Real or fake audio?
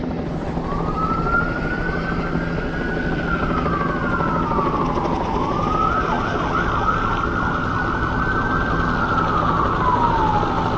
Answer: real